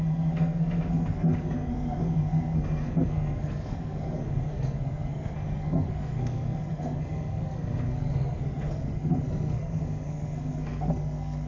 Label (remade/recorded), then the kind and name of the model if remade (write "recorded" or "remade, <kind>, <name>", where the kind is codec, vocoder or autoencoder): remade, codec, SNAC